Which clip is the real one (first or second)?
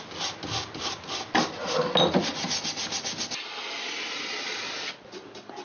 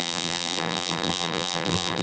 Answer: first